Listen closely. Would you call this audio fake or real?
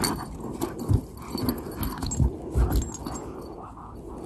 real